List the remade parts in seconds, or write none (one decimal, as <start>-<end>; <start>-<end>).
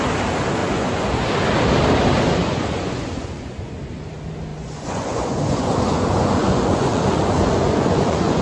0.6-1.2; 2.4-3.8; 4.5-8.4